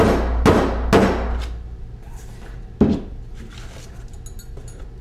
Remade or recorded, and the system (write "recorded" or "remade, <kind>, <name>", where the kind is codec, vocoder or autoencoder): recorded